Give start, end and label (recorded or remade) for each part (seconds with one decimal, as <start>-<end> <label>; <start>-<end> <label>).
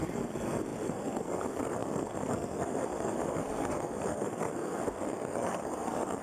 0.0-6.2 remade